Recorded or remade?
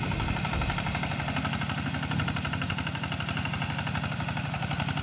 recorded